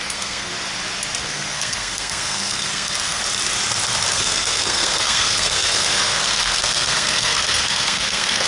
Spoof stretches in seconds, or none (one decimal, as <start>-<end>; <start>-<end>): 0.0-0.5; 1.2-3.2; 4.1-8.5